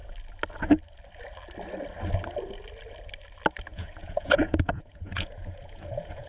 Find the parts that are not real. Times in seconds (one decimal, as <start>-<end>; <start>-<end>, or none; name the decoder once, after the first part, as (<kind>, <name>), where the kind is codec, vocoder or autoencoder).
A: 3.7-6.3 (vocoder, Vocos)